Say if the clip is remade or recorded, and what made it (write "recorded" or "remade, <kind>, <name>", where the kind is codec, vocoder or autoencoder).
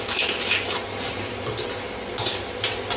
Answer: recorded